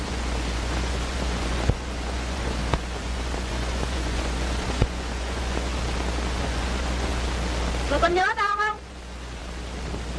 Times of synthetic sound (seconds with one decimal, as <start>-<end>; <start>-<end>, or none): 0.0-5.7; 6.4-7.1; 7.9-9.4